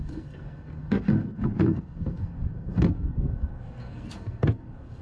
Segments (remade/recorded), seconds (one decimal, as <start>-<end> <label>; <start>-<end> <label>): 0.0-5.0 remade